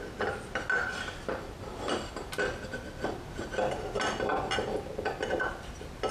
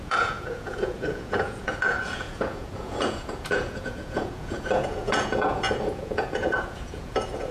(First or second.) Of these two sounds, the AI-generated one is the second